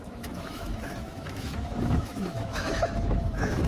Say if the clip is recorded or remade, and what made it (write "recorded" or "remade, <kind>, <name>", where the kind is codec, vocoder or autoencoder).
remade, autoencoder, DAC-VAE